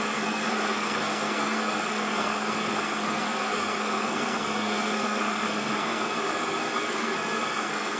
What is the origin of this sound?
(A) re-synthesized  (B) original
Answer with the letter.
A